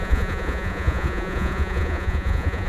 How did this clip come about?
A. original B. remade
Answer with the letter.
B